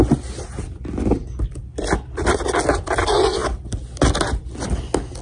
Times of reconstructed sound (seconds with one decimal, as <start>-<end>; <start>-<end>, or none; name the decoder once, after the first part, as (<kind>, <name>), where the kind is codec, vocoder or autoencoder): none